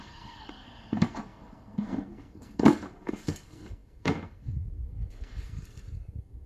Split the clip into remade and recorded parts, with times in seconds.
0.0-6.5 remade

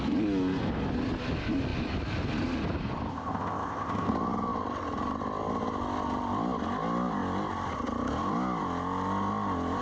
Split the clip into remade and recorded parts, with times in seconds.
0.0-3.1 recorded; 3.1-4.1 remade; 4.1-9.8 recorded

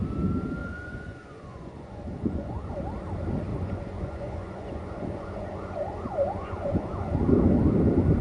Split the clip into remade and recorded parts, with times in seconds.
0.0-0.6 recorded; 0.6-2.7 remade; 2.7-3.5 recorded; 3.5-7.1 remade; 7.1-8.2 recorded